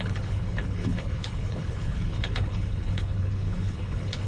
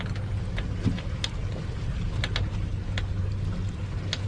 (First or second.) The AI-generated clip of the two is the first